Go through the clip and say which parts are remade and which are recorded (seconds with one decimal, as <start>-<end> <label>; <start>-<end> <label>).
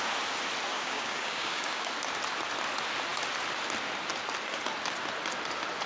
0.0-0.7 recorded; 0.7-1.9 remade; 1.9-5.9 recorded